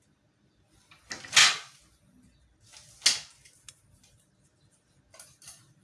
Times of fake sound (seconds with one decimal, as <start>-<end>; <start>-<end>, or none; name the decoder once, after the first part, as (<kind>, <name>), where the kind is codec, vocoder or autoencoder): none